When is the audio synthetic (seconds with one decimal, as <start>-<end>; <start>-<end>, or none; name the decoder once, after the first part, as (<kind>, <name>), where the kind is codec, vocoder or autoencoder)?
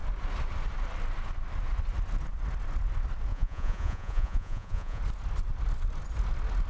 3.3-5.0 (vocoder, Vocos)